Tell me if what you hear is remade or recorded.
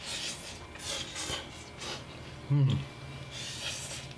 recorded